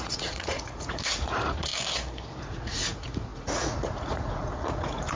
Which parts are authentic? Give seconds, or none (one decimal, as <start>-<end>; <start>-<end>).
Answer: 1.7-2.4